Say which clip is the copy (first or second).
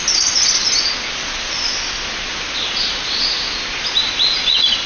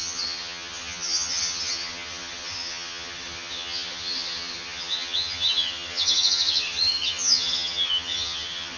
second